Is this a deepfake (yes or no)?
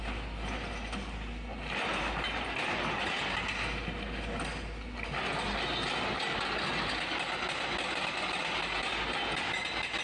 no